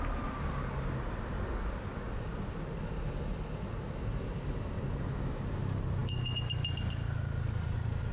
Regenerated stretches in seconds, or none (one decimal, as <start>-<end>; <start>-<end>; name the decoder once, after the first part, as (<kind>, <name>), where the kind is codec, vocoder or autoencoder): none

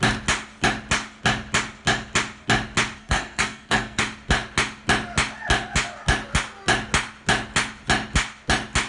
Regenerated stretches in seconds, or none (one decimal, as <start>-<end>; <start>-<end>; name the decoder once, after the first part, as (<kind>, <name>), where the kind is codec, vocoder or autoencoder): 3.0-4.0 (codec, SNAC)

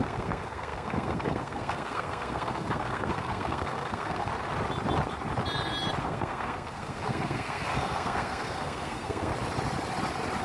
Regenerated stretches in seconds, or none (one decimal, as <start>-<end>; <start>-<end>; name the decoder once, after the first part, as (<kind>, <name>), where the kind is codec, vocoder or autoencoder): 0.0-4.3 (codec, SNAC); 6.0-9.3

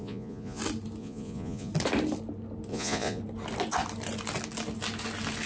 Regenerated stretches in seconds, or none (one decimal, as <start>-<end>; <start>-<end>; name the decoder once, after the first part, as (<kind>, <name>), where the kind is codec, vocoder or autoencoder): 0.0-0.6 (vocoder, Vocos); 1.0-1.7; 2.7-3.2

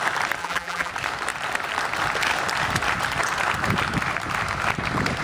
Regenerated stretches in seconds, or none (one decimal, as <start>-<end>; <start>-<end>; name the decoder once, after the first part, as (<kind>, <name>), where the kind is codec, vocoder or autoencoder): 0.4-0.9 (vocoder, BigVGAN v2)

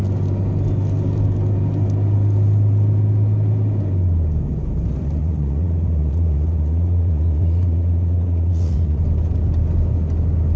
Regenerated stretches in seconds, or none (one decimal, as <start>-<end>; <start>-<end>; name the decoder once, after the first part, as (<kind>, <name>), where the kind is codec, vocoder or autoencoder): 5.2-9.0 (vocoder, Vocos)